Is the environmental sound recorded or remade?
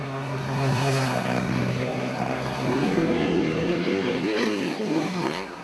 remade